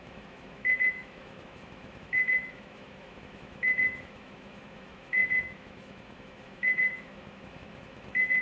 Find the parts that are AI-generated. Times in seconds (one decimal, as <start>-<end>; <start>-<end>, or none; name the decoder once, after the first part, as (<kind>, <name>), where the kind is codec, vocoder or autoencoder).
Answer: 0.0-8.4 (autoencoder, DAC-VAE)